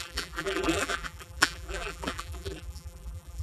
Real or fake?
fake